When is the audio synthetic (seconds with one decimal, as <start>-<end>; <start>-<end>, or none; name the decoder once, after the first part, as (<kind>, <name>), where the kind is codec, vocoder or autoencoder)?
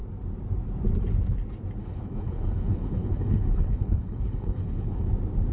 1.8-5.1 (codec, HILCodec)